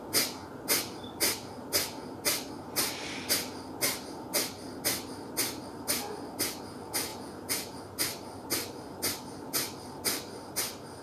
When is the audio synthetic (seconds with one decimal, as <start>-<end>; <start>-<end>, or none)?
7.1-7.8